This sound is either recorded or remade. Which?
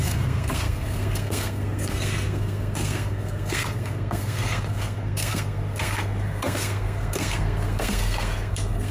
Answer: remade